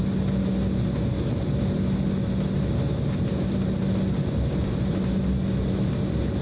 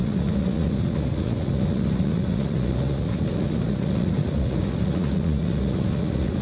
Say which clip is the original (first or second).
first